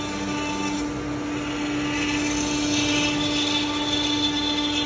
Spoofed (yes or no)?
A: no